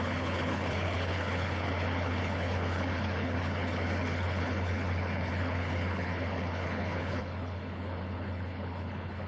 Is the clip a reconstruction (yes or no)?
yes